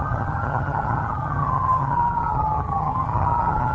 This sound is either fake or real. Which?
fake